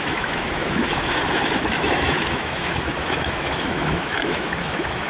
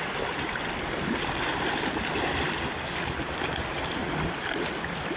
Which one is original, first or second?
second